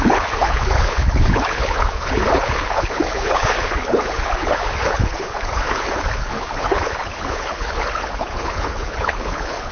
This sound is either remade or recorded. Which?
remade